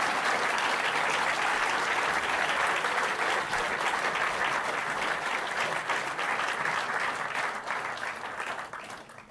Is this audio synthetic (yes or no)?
no